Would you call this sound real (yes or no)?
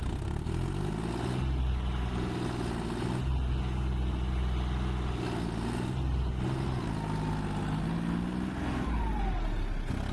yes